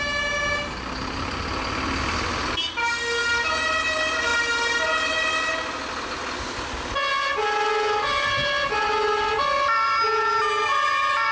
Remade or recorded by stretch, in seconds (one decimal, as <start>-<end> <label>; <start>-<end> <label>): 0.0-11.3 recorded